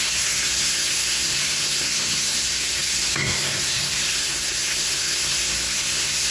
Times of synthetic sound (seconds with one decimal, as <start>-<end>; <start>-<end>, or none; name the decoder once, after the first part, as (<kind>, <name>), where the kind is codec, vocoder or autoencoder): 0.0-6.3 (codec, SNAC)